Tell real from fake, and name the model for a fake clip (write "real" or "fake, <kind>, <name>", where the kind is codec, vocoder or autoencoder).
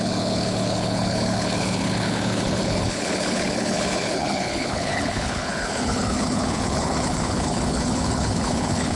fake, codec, HILCodec